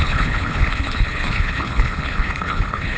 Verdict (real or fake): fake